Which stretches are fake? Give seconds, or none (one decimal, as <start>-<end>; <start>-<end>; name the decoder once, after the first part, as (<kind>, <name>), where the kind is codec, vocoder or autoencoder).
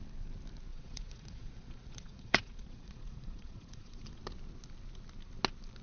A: 0.7-4.2 (vocoder, Vocos)